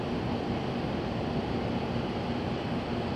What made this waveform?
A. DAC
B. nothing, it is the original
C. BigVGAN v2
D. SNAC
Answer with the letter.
B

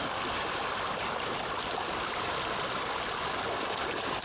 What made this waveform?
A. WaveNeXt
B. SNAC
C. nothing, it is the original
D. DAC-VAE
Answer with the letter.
C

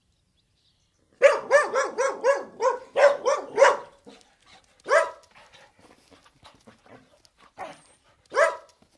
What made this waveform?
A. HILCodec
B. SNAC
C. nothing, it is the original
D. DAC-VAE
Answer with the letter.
C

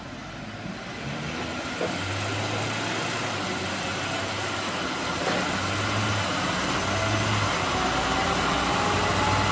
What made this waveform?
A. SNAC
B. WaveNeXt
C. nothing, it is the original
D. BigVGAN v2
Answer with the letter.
C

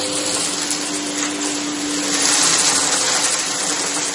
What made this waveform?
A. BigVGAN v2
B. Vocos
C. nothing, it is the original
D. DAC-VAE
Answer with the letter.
C